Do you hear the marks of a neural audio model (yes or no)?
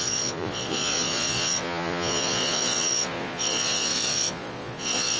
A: yes